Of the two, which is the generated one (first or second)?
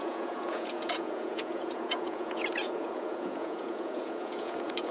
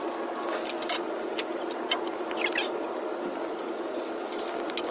first